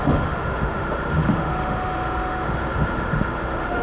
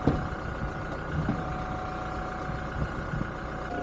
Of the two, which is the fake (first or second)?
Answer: first